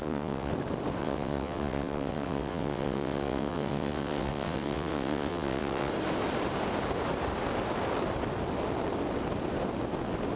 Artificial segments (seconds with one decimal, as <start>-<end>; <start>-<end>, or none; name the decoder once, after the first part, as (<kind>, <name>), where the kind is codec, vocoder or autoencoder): 0.0-0.5 (vocoder, WaveNeXt); 1.0-5.9